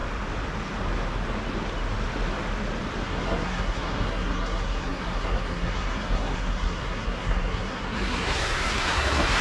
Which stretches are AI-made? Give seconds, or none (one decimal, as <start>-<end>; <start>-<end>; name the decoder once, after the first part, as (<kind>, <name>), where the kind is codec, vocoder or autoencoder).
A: 3.0-9.4 (codec, SNAC)